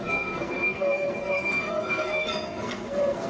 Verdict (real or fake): fake